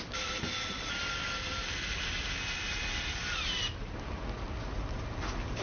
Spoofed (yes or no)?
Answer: no